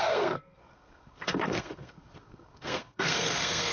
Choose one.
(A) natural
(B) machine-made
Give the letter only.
B